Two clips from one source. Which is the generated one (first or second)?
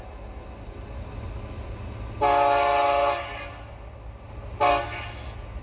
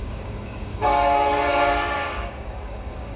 second